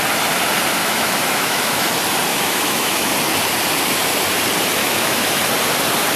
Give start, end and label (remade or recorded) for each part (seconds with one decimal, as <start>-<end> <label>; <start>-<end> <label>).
0.0-0.8 recorded; 0.8-1.9 remade; 1.9-2.3 recorded; 2.3-3.1 remade; 3.1-4.8 recorded; 4.8-5.4 remade; 5.4-6.2 recorded